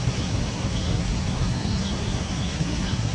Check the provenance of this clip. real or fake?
fake